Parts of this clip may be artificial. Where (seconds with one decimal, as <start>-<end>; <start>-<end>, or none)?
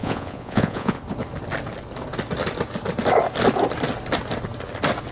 0.0-1.0